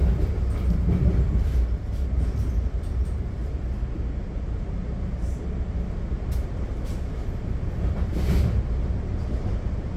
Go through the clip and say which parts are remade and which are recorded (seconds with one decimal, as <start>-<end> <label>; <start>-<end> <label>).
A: 0.0-3.4 recorded; 3.4-4.0 remade; 4.0-5.2 recorded; 5.2-6.7 remade; 6.7-10.0 recorded